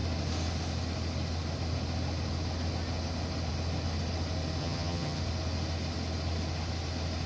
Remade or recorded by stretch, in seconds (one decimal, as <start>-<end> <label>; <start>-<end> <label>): 0.0-4.6 recorded; 4.6-5.2 remade; 5.2-7.3 recorded